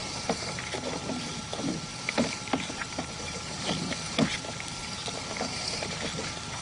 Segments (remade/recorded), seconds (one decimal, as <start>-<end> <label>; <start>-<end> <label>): 0.0-1.3 remade; 1.3-1.9 recorded; 1.9-3.1 remade; 3.1-6.6 recorded